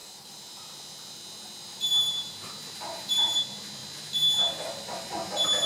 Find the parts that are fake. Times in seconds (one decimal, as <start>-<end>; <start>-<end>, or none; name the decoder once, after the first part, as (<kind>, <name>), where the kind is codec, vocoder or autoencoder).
0.0-3.4 (vocoder, BigVGAN v2)